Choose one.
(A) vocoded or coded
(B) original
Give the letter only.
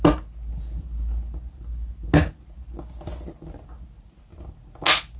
B